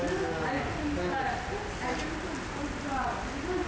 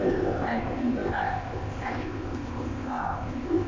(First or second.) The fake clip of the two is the second